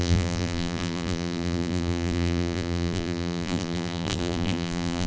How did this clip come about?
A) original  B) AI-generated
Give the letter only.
B